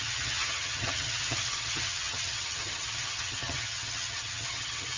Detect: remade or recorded remade